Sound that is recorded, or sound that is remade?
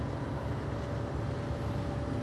recorded